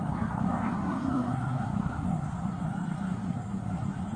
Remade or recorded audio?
remade